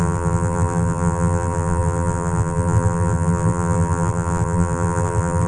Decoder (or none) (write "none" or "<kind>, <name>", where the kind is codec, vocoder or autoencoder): vocoder, BigVGAN v2